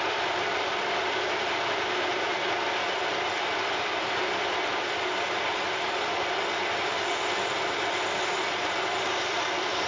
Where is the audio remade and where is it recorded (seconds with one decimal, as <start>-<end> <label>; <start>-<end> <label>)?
0.0-9.9 remade